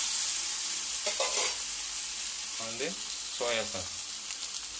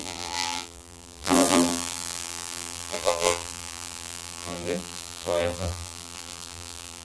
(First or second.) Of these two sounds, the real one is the first